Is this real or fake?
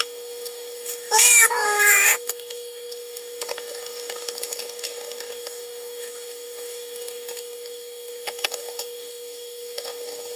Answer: fake